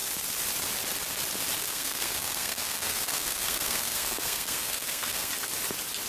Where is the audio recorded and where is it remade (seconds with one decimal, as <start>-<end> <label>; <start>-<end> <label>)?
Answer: 0.0-1.6 recorded; 1.6-5.3 remade; 5.3-6.1 recorded